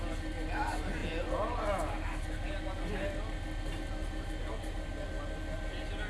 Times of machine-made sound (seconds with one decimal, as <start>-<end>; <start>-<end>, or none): none